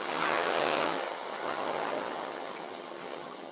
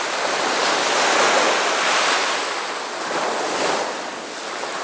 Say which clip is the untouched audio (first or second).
second